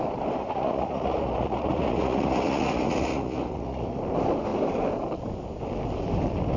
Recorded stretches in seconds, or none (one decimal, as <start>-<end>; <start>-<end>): 0.0-0.4; 4.0-6.6